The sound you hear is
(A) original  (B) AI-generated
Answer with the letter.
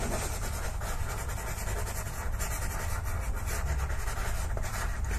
A